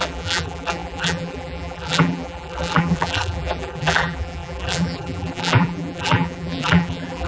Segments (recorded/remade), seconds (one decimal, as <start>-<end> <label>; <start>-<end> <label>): 0.0-7.3 remade